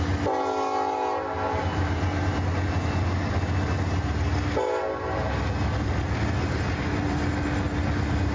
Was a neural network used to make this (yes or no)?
no